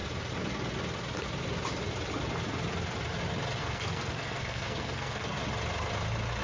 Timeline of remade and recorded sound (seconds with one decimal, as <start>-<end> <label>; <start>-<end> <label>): 0.0-3.6 recorded; 3.6-5.4 remade; 5.4-6.4 recorded